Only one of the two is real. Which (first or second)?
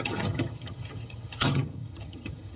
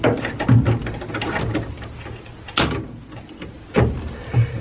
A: second